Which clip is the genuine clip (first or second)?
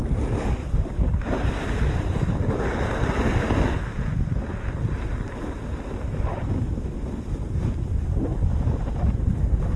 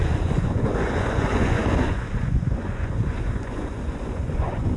first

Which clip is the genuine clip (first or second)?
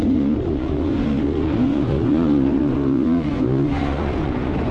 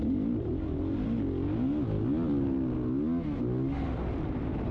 second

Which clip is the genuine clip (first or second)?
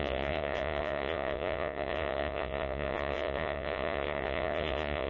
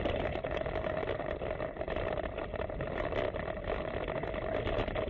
second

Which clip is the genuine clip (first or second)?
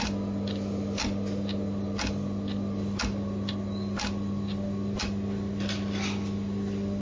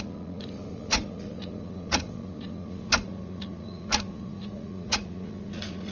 first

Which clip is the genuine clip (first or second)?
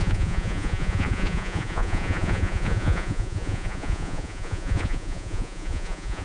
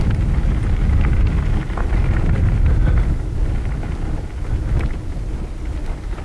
second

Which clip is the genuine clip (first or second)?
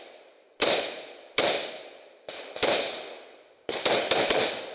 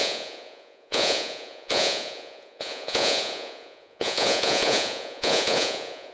first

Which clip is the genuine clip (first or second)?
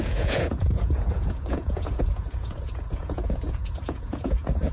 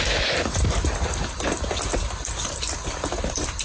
second